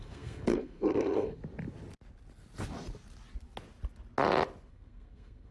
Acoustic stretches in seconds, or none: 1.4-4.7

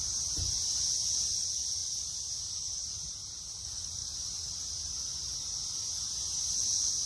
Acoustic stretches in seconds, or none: 0.0-7.1

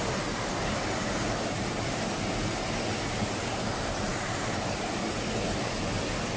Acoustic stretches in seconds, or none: 0.0-4.1; 4.9-6.4

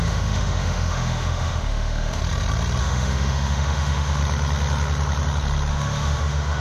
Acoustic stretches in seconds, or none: 2.2-2.8; 4.2-5.7

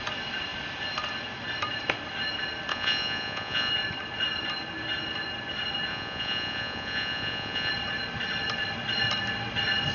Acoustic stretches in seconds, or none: 0.0-2.7; 3.7-5.9; 7.7-9.9

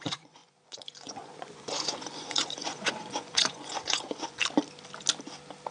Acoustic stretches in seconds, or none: 4.4-5.7